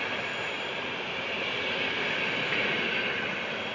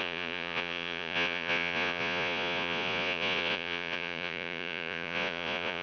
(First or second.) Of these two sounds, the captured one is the first